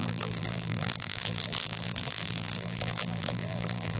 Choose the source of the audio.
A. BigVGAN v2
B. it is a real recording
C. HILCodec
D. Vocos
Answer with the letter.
A